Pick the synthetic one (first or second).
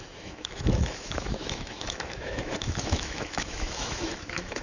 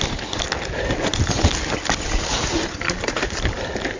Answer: first